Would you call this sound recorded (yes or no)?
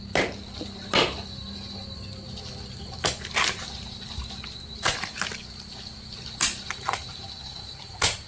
yes